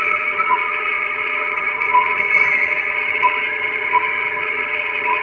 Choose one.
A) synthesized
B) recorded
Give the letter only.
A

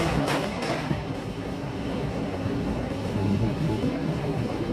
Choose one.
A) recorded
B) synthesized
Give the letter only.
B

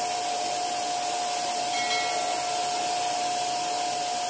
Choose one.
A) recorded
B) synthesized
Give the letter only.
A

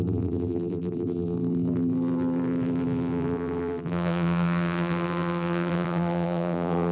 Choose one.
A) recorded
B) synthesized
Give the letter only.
B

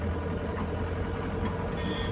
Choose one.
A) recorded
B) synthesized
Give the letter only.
A